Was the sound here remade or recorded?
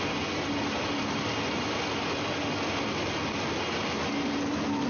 recorded